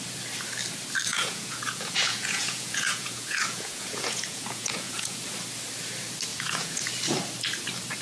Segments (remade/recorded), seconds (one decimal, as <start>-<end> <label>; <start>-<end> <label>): 0.0-1.1 recorded; 1.1-5.2 remade; 5.2-6.3 recorded; 6.3-6.8 remade; 6.8-8.0 recorded